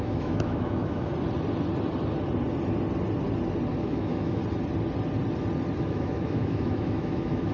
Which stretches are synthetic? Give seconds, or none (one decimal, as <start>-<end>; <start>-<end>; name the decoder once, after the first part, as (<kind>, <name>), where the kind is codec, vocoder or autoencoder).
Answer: 0.0-1.1 (autoencoder, DAC-VAE); 3.8-4.4; 5.8-7.5